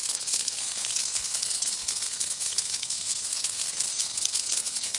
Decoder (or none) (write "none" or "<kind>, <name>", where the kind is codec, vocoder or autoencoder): codec, SNAC